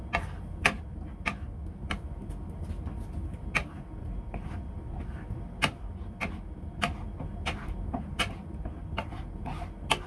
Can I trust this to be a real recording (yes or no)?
yes